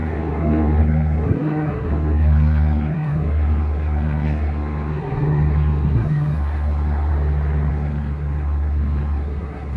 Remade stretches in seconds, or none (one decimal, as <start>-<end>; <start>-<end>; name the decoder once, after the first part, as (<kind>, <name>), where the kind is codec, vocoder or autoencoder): 0.0-7.1 (codec, SNAC); 7.7-9.8